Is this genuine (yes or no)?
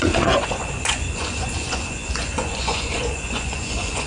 no